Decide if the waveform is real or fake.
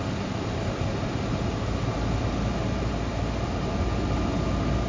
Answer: real